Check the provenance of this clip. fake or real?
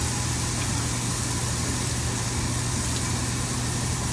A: real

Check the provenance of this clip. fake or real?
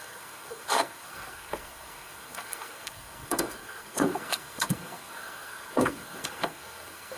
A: fake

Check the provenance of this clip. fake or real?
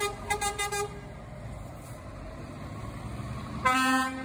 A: real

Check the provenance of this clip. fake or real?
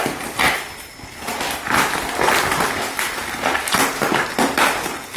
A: real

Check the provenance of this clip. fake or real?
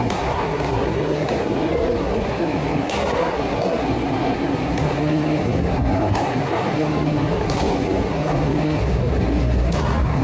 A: fake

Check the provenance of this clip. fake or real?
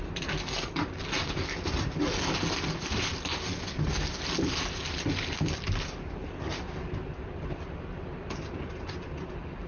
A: real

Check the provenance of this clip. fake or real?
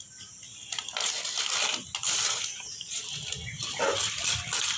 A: real